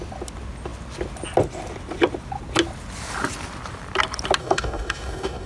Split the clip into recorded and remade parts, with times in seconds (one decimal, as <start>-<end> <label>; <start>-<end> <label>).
0.0-4.4 recorded; 4.4-5.5 remade